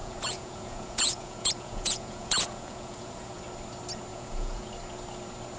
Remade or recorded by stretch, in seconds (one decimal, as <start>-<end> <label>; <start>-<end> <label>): 0.0-3.4 remade; 3.4-4.1 recorded; 4.1-4.7 remade; 4.7-5.6 recorded